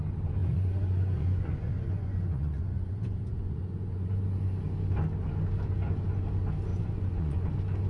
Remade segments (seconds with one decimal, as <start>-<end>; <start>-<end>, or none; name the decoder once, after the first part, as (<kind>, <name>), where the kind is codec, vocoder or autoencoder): 0.4-4.1 (vocoder, Vocos); 6.7-7.5